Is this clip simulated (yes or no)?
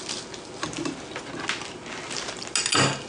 no